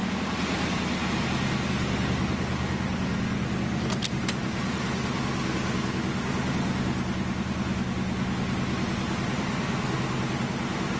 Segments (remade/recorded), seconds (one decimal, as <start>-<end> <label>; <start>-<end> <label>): 0.0-11.0 recorded